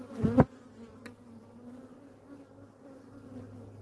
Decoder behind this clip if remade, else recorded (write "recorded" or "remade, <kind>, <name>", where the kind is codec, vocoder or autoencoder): recorded